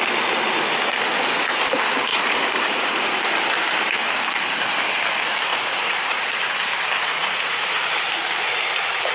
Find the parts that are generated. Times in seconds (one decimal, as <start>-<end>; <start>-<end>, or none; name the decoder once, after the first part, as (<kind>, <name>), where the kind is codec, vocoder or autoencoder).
2.1-3.2 (vocoder, Vocos); 5.5-6.3; 7.1-7.9